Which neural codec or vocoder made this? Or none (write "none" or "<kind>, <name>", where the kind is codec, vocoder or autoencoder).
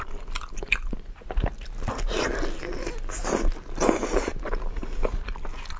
none